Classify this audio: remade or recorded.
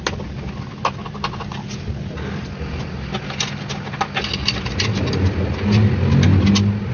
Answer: recorded